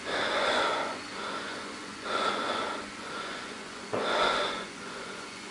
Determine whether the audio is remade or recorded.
remade